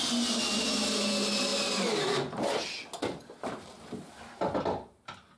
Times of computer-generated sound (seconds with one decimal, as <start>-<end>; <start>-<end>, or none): none